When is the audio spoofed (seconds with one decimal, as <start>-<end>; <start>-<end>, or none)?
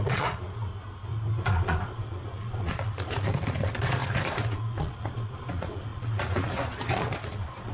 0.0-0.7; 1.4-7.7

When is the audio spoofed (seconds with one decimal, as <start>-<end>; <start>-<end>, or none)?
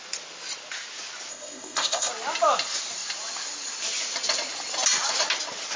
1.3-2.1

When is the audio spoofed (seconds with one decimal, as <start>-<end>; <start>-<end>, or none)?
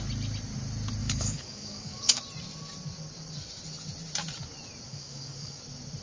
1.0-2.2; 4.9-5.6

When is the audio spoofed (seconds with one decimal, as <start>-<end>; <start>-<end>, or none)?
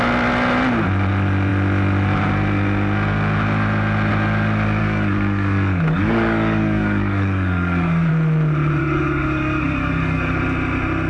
4.8-8.1; 8.8-10.4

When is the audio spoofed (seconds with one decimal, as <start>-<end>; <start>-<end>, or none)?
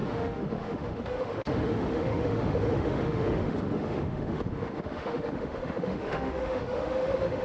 0.0-7.4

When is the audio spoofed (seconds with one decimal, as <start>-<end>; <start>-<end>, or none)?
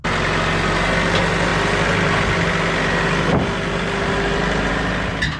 none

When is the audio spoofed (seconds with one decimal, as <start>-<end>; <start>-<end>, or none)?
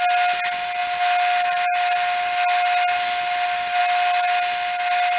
none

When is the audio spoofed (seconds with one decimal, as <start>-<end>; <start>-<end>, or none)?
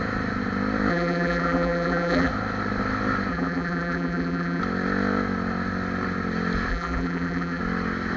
0.9-2.3; 3.3-4.6; 6.7-7.6